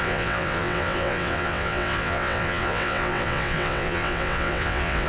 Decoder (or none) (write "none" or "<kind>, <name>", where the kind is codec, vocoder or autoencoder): vocoder, WaveNeXt